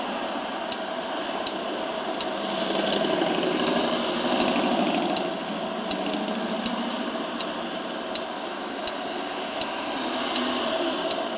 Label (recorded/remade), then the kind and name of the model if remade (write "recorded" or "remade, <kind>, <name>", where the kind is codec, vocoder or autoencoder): recorded